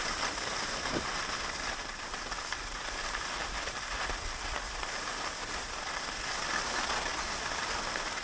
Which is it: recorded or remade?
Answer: recorded